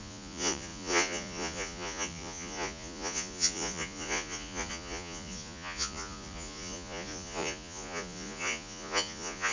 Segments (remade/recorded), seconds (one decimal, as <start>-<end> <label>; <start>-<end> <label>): 0.0-9.5 remade